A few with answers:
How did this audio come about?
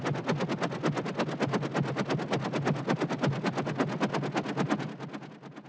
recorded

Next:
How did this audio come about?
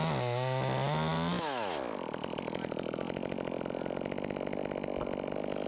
recorded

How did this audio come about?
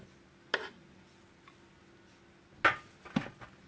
recorded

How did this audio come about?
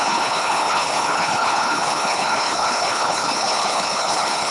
remade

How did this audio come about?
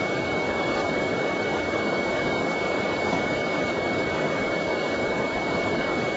remade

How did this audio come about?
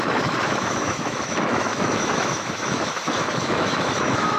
remade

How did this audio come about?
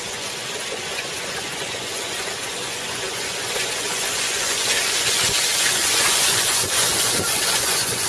remade